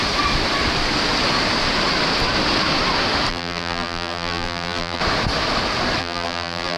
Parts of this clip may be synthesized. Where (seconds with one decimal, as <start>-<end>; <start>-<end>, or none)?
3.3-5.0; 6.0-6.8